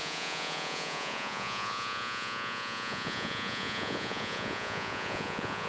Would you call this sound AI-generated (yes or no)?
yes